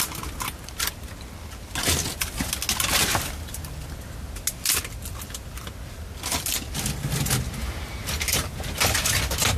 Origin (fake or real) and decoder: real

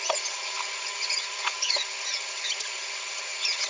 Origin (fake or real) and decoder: fake, vocoder, HiFi-GAN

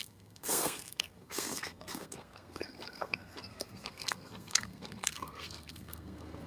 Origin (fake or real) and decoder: fake, codec, SNAC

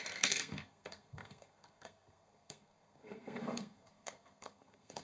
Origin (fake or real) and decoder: fake, codec, SNAC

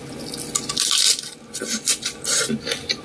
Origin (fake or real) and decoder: real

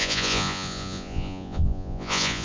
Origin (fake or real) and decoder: fake, vocoder, Vocos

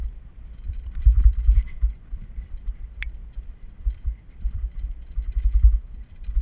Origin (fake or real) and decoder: fake, vocoder, BigVGAN v2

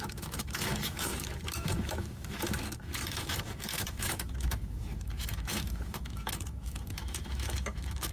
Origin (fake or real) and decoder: fake, autoencoder, DAC-VAE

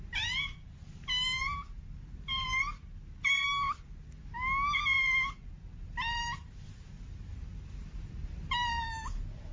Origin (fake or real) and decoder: real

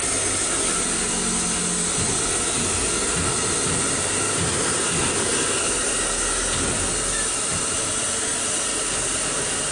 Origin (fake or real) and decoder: real